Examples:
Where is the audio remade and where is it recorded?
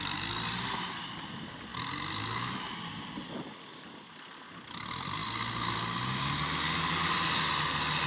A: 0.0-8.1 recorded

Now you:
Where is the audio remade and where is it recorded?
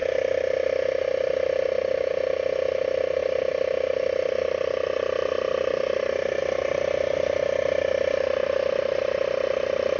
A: 0.0-10.0 recorded